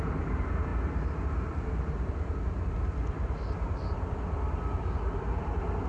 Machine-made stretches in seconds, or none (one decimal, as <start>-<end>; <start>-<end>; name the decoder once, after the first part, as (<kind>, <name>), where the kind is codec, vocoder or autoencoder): none